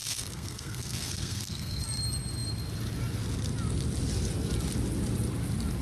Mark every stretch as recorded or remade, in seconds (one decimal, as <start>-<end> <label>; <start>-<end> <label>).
0.0-1.8 remade; 1.8-5.8 recorded